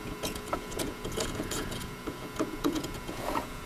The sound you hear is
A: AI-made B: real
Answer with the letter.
A